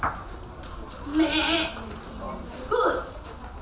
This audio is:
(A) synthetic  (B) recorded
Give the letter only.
B